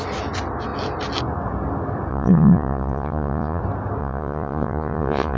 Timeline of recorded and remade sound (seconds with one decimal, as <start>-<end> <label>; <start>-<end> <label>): 0.0-2.1 recorded; 2.1-3.6 remade; 3.6-4.0 recorded; 4.0-5.4 remade